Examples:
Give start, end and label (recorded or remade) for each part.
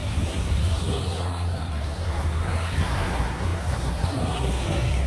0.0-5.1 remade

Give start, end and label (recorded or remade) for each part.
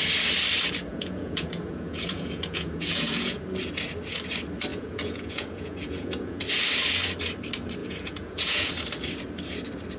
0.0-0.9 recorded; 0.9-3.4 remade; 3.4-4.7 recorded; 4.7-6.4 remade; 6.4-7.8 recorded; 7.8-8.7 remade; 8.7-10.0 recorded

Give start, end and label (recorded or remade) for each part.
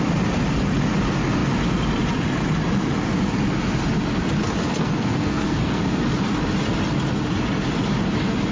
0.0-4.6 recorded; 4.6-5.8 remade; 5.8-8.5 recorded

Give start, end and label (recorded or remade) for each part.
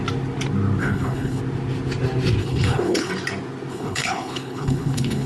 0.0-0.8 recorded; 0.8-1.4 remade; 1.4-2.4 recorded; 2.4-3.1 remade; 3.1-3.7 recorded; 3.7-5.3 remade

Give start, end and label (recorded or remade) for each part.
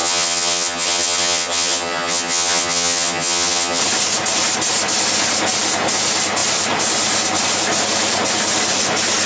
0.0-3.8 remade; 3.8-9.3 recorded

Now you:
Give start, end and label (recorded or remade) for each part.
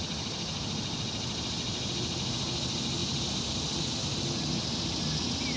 0.0-5.6 recorded